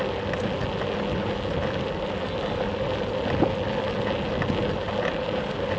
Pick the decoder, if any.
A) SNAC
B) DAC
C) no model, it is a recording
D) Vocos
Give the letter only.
C